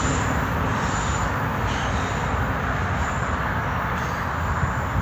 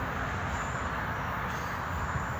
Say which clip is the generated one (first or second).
first